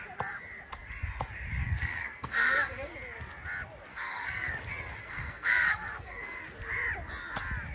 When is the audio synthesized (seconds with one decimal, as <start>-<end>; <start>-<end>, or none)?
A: 1.6-2.9; 3.9-4.5; 5.0-6.4